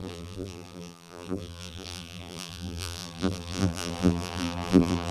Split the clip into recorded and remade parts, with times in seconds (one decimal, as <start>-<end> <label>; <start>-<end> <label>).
0.0-5.1 remade